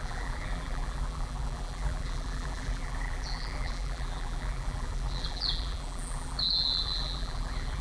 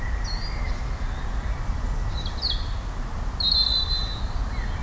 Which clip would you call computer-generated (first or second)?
first